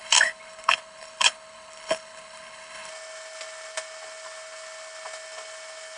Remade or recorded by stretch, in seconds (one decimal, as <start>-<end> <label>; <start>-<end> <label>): 0.0-2.9 remade; 2.9-6.0 recorded